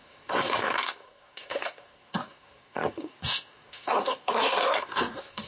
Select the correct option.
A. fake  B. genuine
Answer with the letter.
A